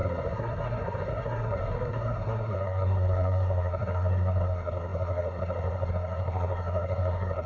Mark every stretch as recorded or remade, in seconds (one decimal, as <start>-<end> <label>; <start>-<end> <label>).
0.0-7.5 remade